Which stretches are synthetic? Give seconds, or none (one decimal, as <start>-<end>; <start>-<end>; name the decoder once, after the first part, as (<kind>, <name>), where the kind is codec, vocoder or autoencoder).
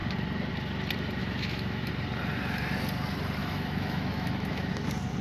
1.2-1.9 (autoencoder, DAC-VAE); 3.4-4.7